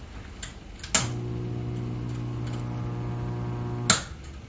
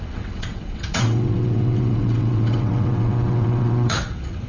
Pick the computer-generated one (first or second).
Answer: second